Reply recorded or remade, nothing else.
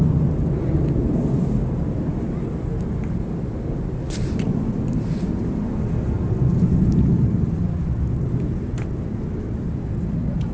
recorded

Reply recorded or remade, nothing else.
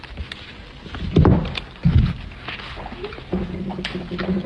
recorded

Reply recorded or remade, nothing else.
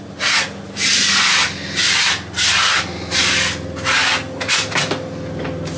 recorded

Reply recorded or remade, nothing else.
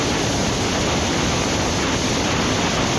recorded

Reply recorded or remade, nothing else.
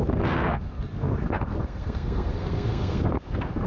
remade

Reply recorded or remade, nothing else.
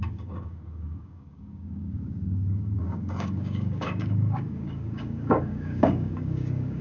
remade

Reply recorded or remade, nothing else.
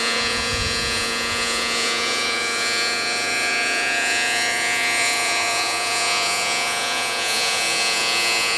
remade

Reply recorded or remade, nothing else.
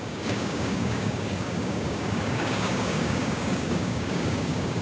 remade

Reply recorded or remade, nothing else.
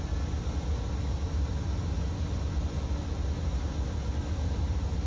recorded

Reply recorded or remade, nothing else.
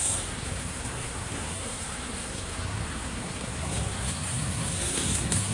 remade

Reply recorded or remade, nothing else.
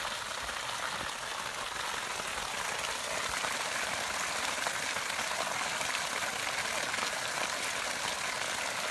recorded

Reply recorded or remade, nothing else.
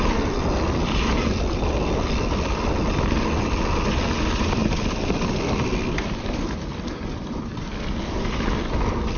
recorded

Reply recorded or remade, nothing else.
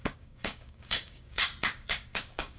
remade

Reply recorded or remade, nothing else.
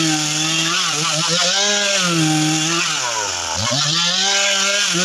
recorded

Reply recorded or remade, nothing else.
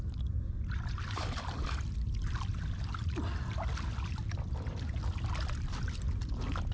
remade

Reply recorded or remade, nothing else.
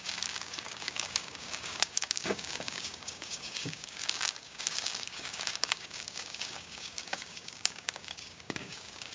remade